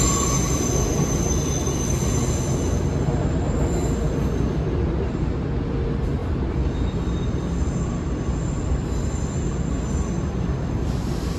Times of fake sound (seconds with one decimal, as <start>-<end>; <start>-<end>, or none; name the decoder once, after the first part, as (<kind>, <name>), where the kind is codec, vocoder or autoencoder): none